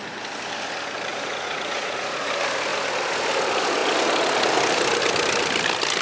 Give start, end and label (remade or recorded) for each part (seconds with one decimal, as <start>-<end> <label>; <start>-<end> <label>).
0.0-1.1 recorded; 1.1-2.3 remade; 2.3-6.0 recorded